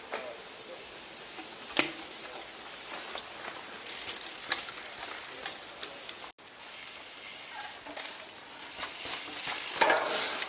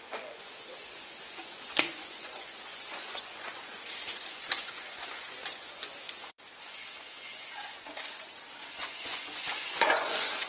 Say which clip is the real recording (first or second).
first